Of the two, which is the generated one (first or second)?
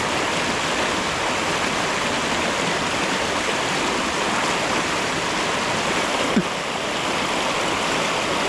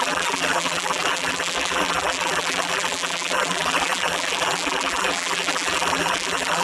second